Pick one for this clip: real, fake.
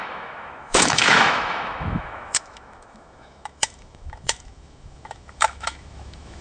fake